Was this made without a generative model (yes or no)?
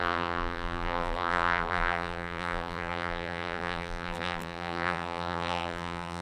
no